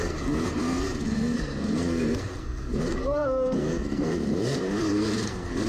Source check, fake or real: fake